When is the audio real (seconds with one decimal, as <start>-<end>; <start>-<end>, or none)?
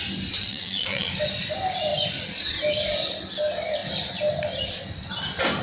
0.0-0.4; 1.1-5.6